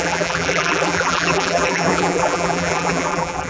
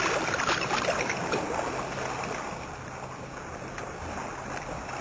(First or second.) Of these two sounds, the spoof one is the first